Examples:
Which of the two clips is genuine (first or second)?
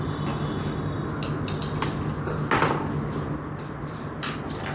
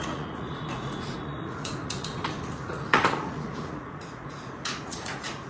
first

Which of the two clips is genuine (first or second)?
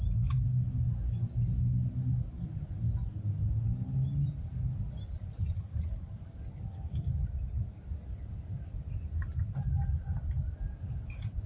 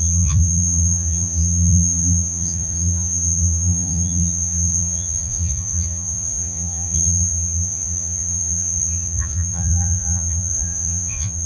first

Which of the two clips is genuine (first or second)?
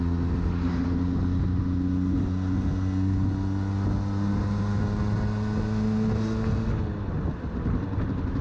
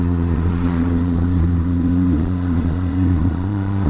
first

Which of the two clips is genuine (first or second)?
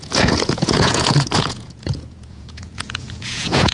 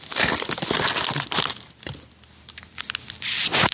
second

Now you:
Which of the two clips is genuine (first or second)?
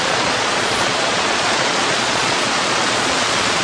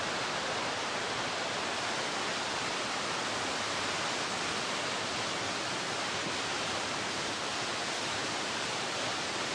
second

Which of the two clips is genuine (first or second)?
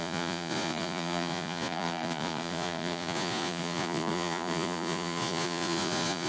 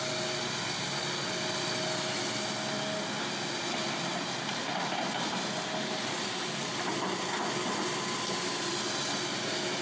second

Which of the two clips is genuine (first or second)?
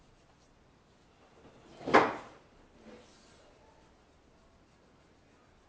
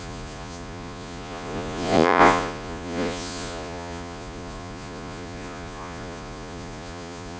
first